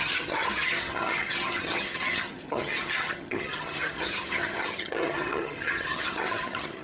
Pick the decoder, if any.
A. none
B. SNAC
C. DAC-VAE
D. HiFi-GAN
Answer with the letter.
D